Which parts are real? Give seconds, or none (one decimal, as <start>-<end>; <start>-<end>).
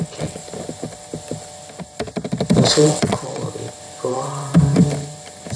0.4-2.7; 3.4-4.1; 4.5-5.6